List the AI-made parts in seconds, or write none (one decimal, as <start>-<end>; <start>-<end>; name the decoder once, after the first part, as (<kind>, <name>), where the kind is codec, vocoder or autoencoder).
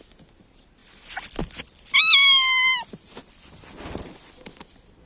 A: none